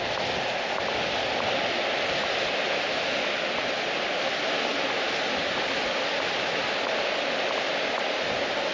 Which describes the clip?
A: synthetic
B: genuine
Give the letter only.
B